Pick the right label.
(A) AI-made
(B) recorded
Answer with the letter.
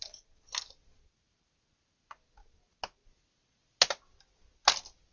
B